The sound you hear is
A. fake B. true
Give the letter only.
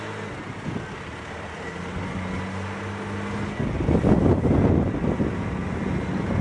B